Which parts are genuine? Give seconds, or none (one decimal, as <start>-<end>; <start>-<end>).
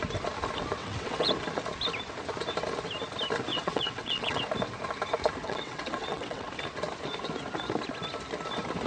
0.0-0.8; 1.3-3.5; 4.4-5.4; 6.5-8.9